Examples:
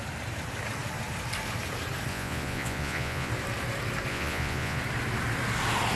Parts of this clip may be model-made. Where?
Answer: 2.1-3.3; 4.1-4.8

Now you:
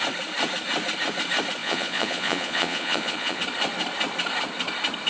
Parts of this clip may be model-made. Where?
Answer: 1.6-3.4